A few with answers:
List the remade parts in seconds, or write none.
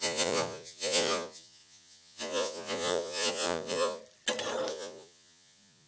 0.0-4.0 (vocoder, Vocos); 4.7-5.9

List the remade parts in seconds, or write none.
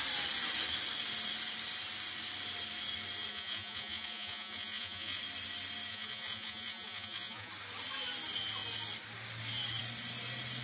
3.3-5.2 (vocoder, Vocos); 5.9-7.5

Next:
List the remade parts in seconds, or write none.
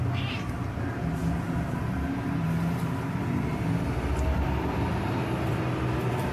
4.1-5.6 (vocoder, BigVGAN v2)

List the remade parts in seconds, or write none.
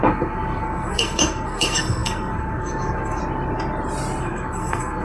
0.0-3.2 (codec, SNAC); 4.2-5.0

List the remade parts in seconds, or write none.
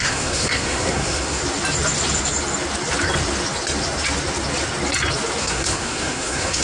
0.0-1.4 (codec, SNAC); 5.4-6.6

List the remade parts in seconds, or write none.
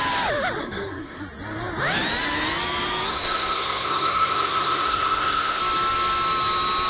0.6-1.2 (codec, SNAC); 3.1-5.6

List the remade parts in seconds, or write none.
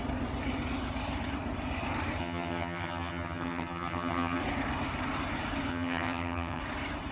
2.2-4.4 (vocoder, HiFi-GAN); 5.7-6.6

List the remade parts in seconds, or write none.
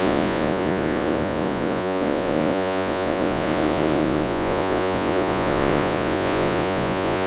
0.0-7.3 (vocoder, Vocos)